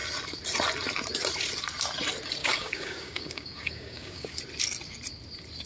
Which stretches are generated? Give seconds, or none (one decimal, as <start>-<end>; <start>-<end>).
2.4-4.3